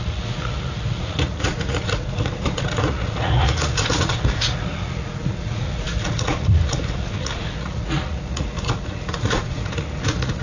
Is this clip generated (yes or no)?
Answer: yes